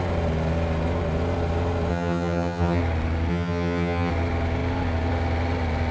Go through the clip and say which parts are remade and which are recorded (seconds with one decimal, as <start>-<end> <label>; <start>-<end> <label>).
0.0-1.9 recorded; 1.9-2.8 remade; 2.8-3.3 recorded; 3.3-4.1 remade; 4.1-5.9 recorded